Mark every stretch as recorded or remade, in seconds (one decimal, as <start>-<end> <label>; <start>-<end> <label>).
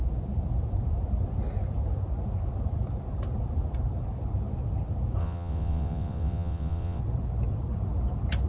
0.0-5.2 recorded; 5.2-7.0 remade; 7.0-8.5 recorded